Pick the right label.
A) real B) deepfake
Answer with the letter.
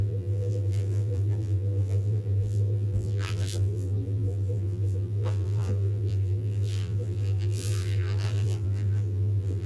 B